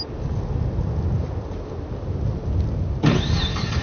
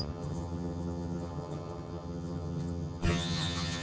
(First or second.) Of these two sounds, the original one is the first